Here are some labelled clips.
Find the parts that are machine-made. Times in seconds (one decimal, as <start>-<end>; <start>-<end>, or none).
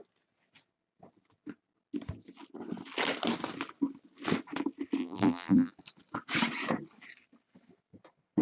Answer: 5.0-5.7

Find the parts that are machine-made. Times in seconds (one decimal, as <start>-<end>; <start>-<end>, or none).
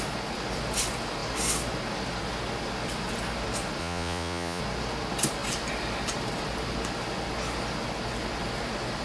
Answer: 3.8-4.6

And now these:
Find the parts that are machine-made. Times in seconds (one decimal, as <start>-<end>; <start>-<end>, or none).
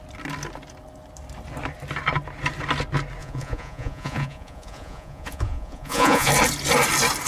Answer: 3.2-6.3